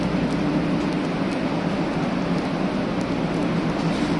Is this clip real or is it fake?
real